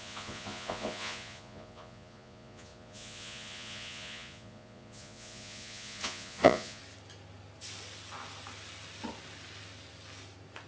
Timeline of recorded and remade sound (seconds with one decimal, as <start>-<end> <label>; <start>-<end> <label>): 0.0-6.8 remade; 6.8-10.7 recorded